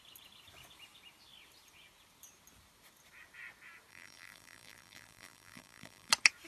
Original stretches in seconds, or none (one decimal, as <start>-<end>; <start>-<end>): 0.0-3.9; 6.1-6.5